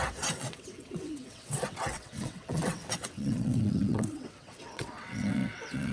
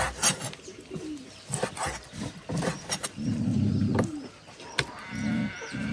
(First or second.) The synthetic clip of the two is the first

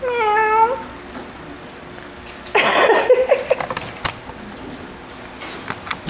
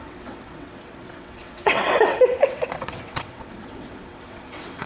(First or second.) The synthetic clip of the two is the second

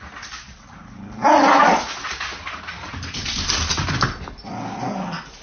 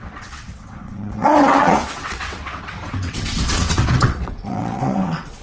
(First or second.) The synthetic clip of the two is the second